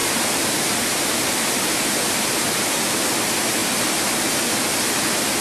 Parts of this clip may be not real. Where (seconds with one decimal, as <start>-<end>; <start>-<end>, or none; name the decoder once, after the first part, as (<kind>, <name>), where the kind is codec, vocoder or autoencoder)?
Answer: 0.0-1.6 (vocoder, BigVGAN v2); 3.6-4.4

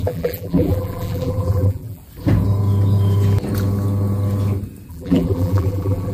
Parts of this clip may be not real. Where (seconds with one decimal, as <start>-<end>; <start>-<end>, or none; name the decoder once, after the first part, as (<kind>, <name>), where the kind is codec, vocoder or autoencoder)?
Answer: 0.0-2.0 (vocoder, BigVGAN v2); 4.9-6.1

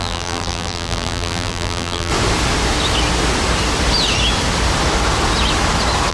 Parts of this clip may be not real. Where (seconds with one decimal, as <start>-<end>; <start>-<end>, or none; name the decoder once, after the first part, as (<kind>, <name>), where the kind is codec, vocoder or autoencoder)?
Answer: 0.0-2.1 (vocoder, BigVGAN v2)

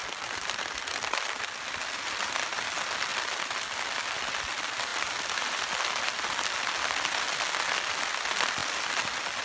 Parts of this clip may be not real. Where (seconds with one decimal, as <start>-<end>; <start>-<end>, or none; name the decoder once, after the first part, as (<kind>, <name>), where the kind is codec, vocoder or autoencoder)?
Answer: none